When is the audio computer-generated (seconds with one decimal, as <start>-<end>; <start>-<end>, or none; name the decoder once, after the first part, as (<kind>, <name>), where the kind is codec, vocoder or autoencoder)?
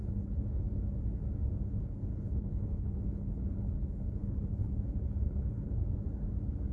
0.0-0.7 (codec, HILCodec); 1.8-5.8